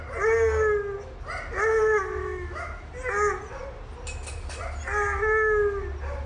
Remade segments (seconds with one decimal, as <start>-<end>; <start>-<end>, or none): 2.2-2.9